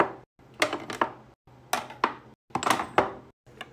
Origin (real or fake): real